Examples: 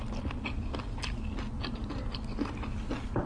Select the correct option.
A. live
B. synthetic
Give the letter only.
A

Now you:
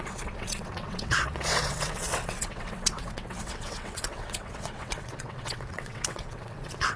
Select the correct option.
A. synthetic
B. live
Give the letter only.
A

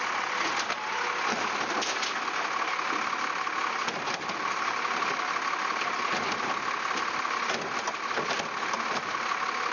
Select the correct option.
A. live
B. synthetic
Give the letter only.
A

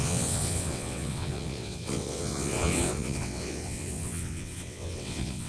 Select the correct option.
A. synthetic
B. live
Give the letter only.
A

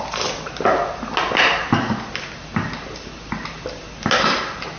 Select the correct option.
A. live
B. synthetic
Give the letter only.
A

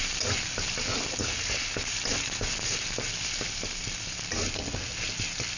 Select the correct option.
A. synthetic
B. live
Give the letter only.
B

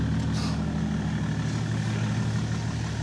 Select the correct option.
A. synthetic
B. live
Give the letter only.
B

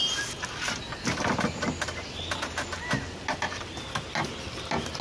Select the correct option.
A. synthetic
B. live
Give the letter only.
B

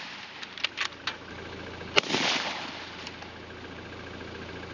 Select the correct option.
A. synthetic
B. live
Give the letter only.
B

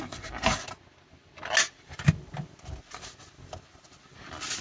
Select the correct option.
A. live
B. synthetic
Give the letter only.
A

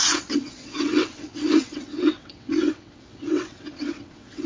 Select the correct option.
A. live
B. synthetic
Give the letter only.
B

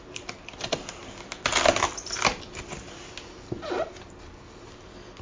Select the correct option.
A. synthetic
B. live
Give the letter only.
B